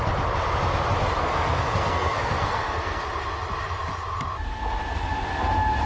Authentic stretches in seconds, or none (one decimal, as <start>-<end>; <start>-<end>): 0.0-1.2; 3.0-5.9